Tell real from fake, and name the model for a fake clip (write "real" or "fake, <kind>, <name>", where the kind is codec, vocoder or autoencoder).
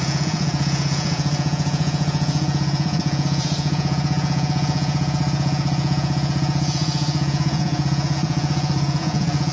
fake, vocoder, Vocos